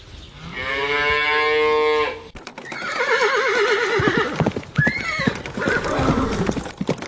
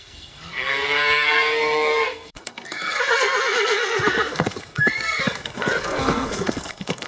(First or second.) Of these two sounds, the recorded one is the first